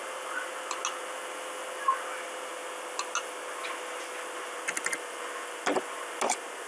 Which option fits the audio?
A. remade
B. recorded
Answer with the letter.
B